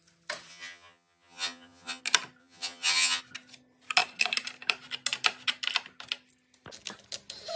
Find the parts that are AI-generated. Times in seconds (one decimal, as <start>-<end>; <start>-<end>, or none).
0.5-2.0; 2.4-3.2